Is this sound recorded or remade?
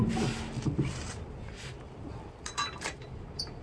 remade